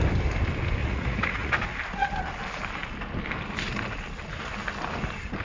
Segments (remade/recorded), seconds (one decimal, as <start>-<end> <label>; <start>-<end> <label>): 0.0-0.8 recorded; 0.8-1.5 remade; 1.5-5.4 recorded